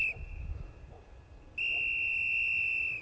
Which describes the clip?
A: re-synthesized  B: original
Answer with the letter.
B